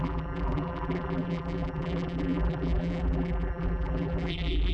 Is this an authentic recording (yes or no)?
no